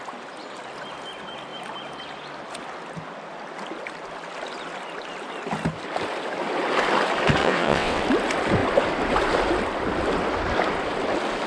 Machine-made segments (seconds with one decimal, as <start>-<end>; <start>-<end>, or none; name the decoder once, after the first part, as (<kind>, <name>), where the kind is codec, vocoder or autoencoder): 7.4-8.0 (vocoder, WaveNeXt)